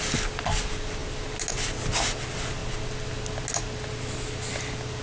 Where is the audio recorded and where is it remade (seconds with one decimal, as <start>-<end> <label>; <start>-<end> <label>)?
0.0-5.0 recorded